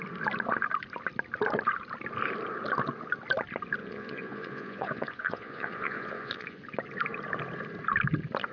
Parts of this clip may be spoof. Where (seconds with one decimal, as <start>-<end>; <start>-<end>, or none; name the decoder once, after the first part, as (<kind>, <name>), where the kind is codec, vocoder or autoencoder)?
3.8-6.6 (vocoder, Vocos)